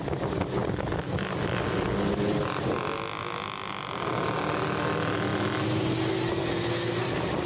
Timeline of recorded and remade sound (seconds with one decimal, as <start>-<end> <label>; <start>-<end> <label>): 0.0-7.5 recorded